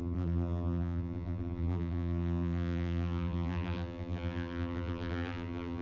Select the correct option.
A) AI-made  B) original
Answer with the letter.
A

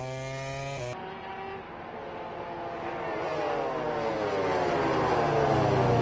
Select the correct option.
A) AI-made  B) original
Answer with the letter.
B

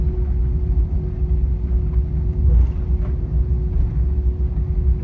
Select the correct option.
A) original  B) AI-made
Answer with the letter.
A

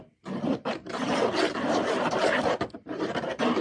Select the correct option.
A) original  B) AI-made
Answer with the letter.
B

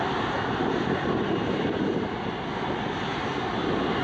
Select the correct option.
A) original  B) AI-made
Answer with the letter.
A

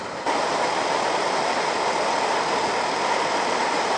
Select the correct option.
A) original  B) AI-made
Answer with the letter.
B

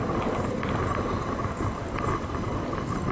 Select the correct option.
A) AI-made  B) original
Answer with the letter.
B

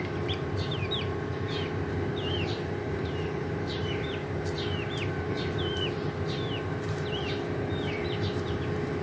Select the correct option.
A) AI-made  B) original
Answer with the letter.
A